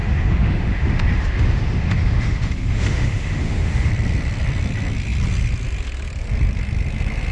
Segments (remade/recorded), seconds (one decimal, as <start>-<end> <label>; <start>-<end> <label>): 0.0-3.9 remade; 3.9-7.3 recorded